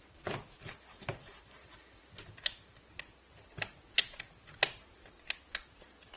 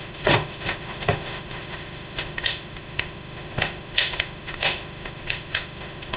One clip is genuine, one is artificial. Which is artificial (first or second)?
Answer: second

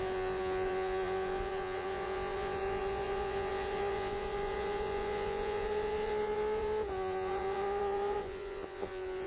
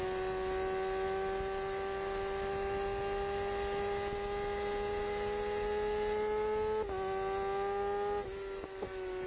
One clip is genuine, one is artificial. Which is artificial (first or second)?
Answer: first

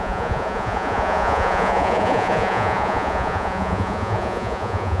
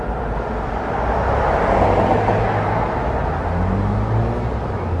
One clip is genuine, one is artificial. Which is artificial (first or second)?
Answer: first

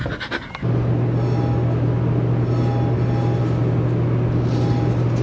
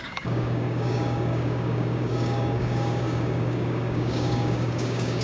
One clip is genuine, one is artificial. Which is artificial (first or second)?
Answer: second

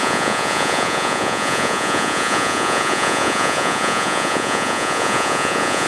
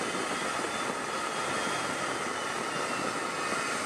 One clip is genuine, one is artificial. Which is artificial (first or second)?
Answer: first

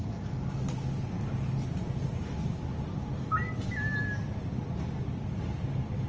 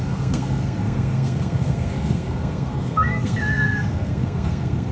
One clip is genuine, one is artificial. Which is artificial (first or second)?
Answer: second